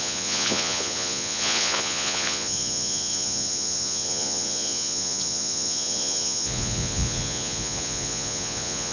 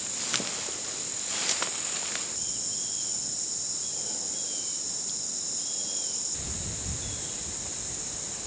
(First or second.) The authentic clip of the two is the second